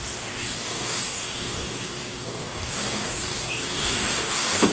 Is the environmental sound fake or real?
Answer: fake